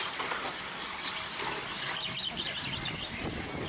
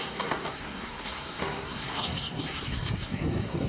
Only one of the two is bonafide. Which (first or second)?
first